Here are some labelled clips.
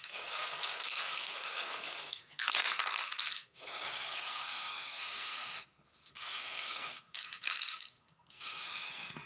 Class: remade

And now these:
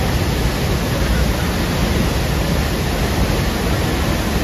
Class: recorded